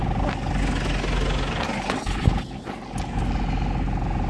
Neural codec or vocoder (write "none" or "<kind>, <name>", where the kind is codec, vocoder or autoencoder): none